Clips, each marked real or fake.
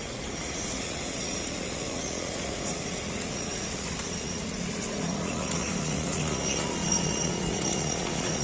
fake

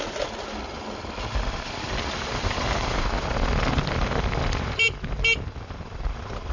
real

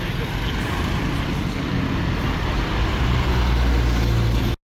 real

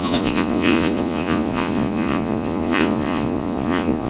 fake